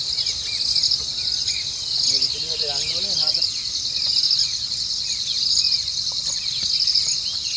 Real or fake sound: real